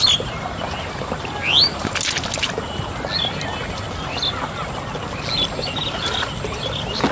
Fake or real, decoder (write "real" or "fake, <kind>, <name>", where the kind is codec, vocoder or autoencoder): real